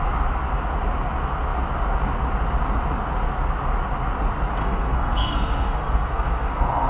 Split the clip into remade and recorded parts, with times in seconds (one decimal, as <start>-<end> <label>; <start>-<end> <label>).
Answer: 0.0-4.6 recorded; 4.6-6.9 remade